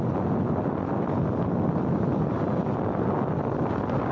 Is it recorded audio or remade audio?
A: recorded